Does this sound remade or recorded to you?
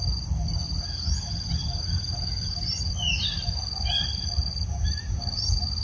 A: recorded